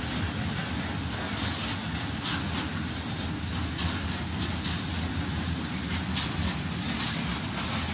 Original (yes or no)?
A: yes